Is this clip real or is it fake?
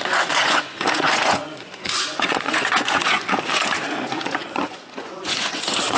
fake